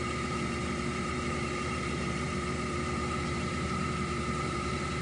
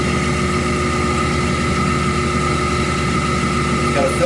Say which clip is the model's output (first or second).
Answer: first